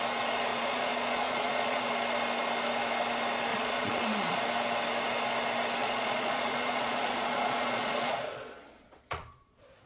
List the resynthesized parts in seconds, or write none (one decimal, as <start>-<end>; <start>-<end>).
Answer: 0.5-1.9; 3.5-4.4; 5.8-9.9

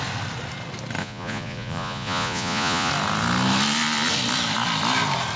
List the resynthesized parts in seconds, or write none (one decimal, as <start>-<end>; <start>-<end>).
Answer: 1.0-2.9

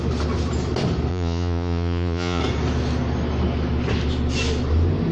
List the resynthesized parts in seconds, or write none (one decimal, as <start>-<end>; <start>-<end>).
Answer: 1.1-2.4

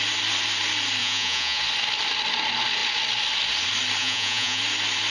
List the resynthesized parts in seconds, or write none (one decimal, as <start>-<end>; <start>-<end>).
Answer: 1.0-1.6; 4.0-4.6

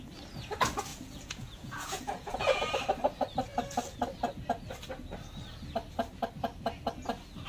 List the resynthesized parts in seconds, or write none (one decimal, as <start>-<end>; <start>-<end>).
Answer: 0.9-2.7

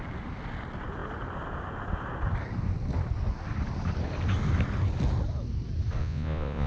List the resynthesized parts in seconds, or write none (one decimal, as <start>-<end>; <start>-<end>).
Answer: 6.0-6.7